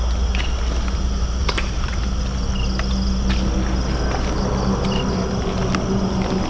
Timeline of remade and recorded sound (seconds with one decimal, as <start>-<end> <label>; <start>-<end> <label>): 0.0-1.4 recorded; 1.4-2.0 remade; 2.0-6.5 recorded